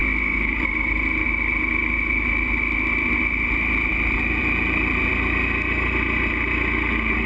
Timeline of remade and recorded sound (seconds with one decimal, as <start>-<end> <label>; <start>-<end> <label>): 0.0-7.3 recorded

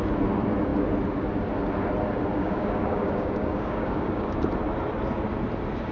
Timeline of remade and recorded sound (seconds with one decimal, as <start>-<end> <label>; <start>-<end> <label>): 0.0-2.4 recorded; 2.4-4.4 remade; 4.4-5.9 recorded

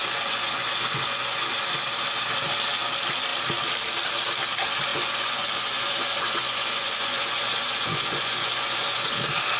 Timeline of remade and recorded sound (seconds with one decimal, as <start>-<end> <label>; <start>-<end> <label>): 0.0-1.5 remade; 1.5-4.9 recorded; 4.9-9.2 remade; 9.2-9.6 recorded

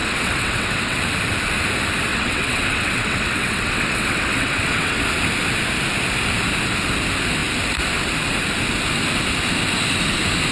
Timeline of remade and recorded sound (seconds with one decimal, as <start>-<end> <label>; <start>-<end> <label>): 0.0-1.0 remade; 1.0-2.1 recorded; 2.1-5.0 remade; 5.0-10.5 recorded

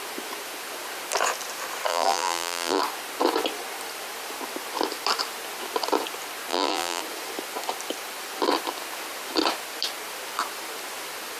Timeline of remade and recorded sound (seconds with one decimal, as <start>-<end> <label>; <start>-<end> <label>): 0.0-1.9 recorded; 1.9-2.8 remade; 2.8-6.5 recorded; 6.5-7.0 remade; 7.0-11.4 recorded

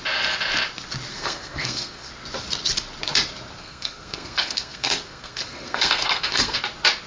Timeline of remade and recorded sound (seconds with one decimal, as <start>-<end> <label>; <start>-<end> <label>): 0.0-1.1 recorded; 1.1-2.1 remade; 2.1-3.6 recorded; 3.6-6.6 remade; 6.6-7.1 recorded

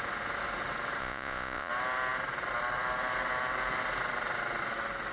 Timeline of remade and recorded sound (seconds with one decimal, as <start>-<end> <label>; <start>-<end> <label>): 0.0-1.0 recorded; 1.0-1.7 remade; 1.7-5.1 recorded